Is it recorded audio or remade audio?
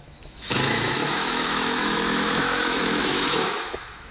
remade